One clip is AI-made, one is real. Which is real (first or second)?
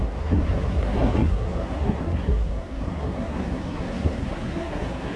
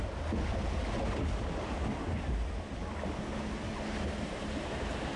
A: second